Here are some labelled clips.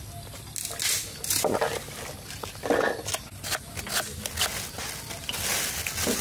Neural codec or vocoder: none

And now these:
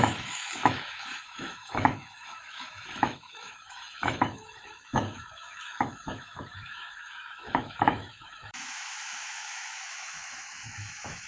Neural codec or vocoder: autoencoder, DAC-VAE